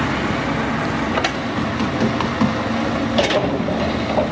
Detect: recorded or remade recorded